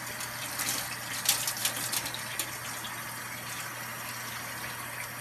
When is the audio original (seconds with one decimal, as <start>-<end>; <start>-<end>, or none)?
0.0-5.2